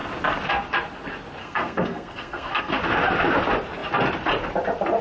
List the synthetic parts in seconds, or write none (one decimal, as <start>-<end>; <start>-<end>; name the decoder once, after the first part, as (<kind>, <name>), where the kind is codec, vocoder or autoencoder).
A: 1.4-2.8 (codec, SNAC)